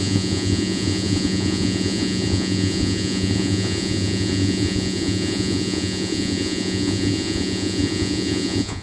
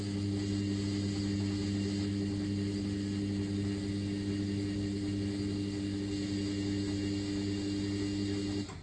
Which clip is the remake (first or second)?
first